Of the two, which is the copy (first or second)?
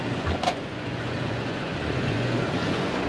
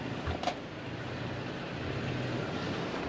first